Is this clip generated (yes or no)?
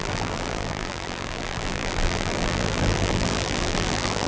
yes